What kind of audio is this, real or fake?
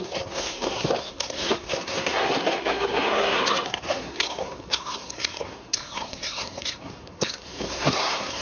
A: fake